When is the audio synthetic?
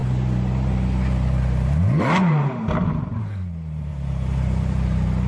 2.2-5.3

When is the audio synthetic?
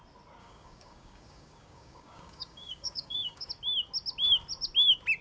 0.4-3.5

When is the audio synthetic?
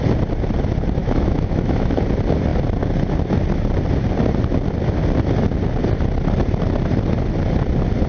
1.0-2.0